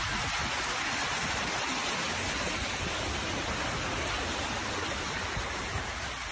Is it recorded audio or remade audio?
recorded